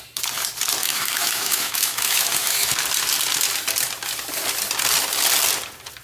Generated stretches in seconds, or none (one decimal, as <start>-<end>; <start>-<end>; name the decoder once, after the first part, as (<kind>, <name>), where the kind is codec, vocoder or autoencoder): 0.8-2.7 (autoencoder, DAC-VAE)